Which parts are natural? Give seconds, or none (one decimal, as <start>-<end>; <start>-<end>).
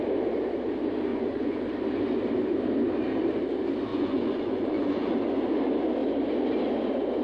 0.0-1.1; 1.7-3.9; 5.2-7.2